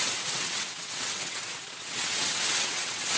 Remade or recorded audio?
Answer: remade